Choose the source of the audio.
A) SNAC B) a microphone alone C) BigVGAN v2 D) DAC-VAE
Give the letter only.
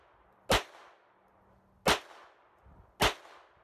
B